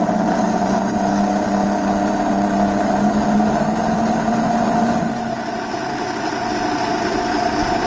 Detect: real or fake real